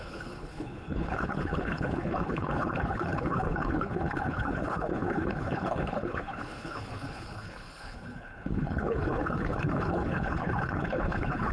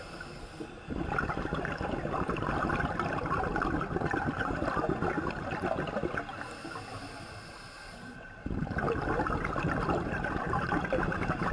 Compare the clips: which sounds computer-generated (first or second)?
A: first